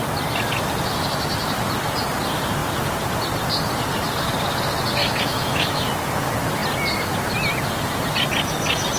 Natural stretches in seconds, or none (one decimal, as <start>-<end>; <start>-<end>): 0.0-5.0; 5.9-9.0